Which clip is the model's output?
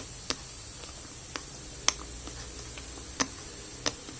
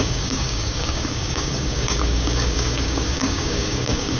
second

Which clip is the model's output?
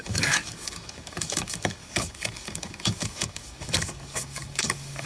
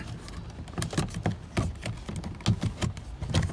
first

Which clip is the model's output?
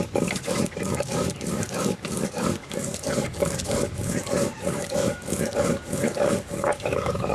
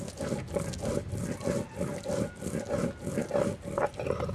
first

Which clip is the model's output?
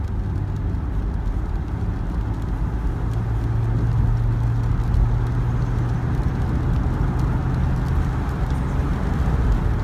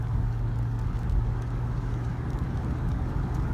second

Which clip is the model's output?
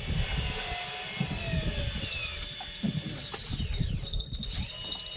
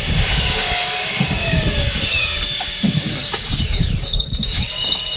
second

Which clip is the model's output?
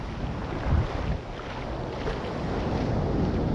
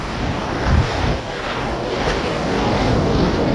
second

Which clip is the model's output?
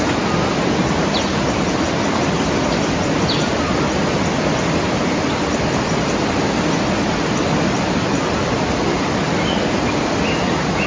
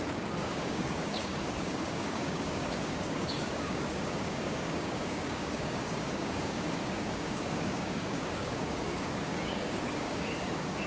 second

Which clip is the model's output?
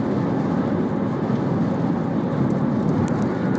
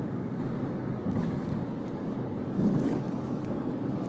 second